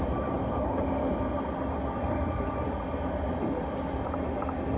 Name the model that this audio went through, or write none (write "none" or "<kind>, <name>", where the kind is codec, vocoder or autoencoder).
none